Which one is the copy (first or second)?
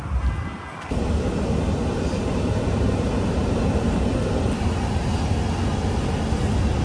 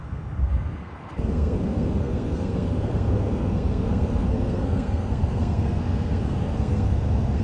second